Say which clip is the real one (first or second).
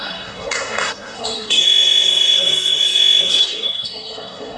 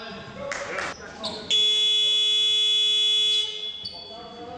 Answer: second